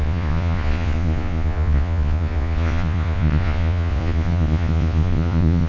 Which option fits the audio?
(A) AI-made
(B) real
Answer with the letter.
A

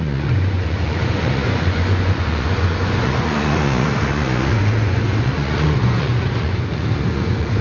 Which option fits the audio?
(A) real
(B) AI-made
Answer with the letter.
B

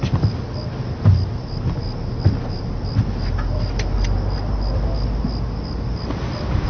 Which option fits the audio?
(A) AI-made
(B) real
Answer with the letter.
B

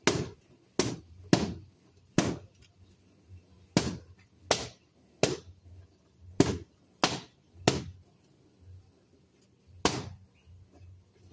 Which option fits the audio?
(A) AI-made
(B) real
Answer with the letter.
B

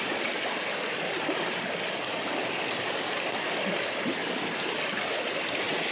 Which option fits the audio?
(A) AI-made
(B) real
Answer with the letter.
B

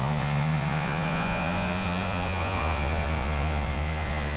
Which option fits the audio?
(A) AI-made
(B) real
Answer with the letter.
A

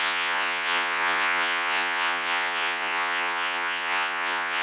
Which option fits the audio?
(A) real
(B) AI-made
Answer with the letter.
B